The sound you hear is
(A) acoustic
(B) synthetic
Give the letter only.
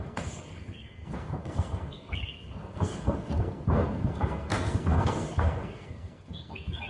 B